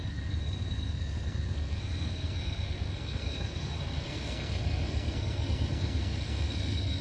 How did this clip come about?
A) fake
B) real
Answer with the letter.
A